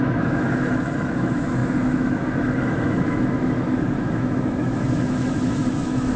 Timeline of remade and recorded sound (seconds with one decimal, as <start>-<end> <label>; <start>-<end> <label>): 0.0-6.2 remade